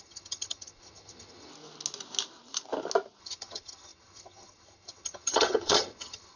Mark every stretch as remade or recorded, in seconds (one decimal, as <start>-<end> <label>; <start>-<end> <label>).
0.0-1.5 remade; 1.5-3.2 recorded; 3.2-6.4 remade